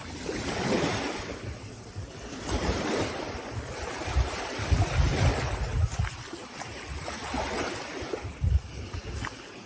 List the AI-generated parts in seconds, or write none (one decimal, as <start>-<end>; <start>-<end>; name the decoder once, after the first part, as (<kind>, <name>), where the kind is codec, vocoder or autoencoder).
none